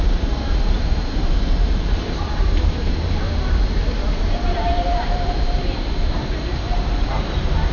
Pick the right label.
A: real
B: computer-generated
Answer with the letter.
B